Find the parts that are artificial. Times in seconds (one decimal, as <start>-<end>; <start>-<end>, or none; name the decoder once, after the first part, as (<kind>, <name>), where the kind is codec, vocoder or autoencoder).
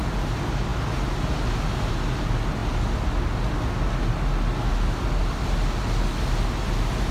none